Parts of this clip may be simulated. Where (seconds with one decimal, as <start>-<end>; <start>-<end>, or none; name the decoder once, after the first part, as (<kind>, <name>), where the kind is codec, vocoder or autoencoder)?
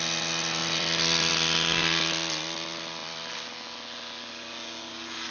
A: 0.6-1.3 (vocoder, BigVGAN v2); 3.0-3.5